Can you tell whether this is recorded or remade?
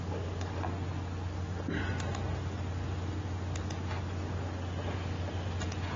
recorded